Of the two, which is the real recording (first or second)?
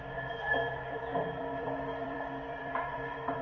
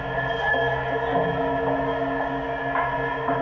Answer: second